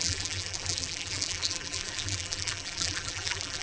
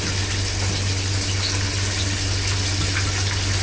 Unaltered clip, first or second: second